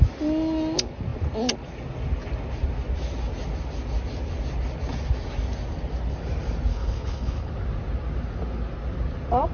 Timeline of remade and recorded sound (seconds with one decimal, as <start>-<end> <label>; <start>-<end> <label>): 0.0-6.7 recorded; 6.7-7.5 remade; 7.5-9.5 recorded